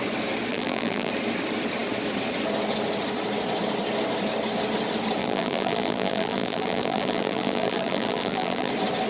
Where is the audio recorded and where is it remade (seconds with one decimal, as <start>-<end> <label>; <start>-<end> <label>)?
0.0-0.5 recorded; 0.5-1.1 remade; 1.1-5.2 recorded; 5.2-8.7 remade; 8.7-9.1 recorded